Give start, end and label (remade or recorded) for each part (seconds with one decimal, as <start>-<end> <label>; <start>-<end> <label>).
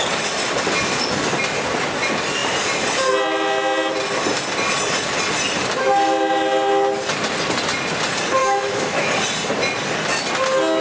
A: 0.0-8.4 recorded; 8.4-9.1 remade; 9.1-10.8 recorded